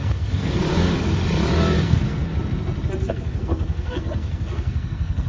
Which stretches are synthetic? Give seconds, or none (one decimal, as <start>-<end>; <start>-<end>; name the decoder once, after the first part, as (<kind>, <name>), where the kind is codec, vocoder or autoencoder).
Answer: 0.0-0.7 (codec, SNAC); 1.8-2.3; 3.1-5.3